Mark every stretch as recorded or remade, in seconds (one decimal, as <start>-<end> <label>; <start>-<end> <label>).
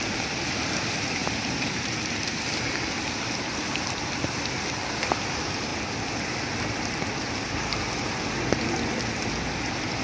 0.0-5.7 remade; 5.7-9.6 recorded; 9.6-10.0 remade